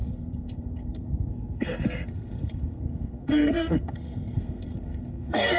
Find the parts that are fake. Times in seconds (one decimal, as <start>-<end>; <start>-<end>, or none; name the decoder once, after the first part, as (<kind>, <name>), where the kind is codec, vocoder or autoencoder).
0.0-5.6 (codec, SNAC)